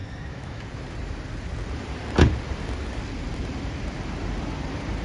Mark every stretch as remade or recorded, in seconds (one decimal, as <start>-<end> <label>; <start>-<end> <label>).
0.0-0.6 remade; 0.6-5.0 recorded